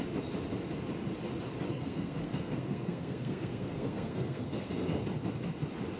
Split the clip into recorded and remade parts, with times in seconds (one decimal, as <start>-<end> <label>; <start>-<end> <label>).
0.0-1.7 recorded; 1.7-5.0 remade; 5.0-6.0 recorded